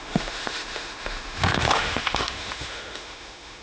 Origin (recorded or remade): remade